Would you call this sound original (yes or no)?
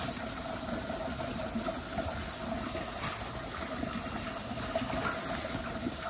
yes